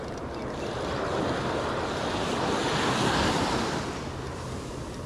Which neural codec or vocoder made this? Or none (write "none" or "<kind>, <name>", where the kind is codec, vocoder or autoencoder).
none